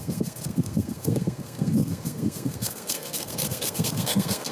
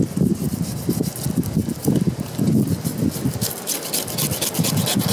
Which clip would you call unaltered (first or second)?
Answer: second